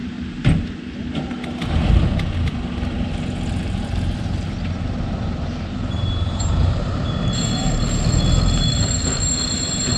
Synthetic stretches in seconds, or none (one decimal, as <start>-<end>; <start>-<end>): 5.7-7.8